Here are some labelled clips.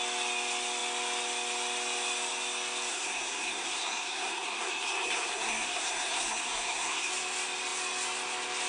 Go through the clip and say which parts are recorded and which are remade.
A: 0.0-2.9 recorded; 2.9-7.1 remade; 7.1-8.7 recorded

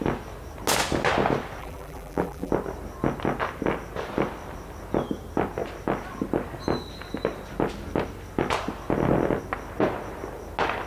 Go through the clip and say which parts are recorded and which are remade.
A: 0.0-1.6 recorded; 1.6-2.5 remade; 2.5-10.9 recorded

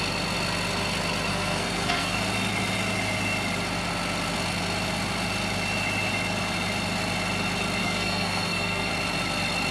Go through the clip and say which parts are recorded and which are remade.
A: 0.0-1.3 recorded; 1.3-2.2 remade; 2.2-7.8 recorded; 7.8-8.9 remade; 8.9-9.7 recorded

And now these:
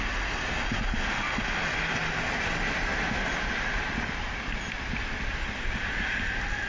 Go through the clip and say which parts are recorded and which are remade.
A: 0.0-6.7 recorded